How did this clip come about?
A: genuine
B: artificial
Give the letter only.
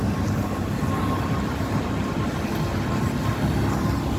A